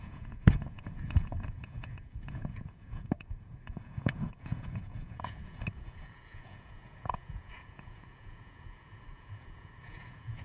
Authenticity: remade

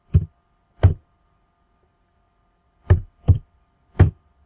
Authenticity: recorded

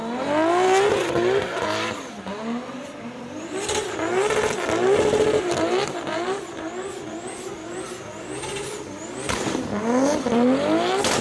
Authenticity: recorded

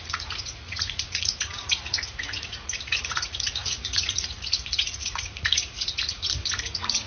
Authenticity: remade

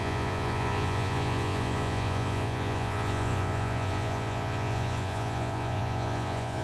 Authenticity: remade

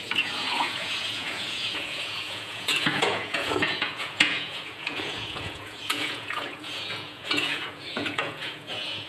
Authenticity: remade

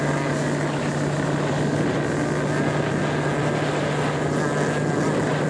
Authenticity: recorded